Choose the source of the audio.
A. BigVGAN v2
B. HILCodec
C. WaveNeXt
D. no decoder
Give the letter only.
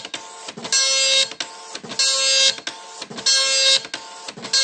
D